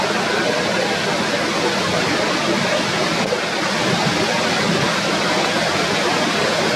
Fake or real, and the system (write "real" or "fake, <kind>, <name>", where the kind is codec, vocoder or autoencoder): real